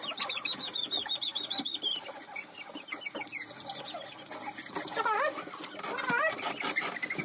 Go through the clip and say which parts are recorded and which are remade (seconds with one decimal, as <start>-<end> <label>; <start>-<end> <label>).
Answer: 0.0-7.2 recorded